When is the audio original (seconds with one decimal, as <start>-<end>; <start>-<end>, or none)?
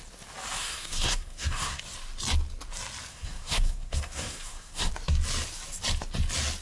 0.0-0.6; 1.8-3.1; 4.9-6.6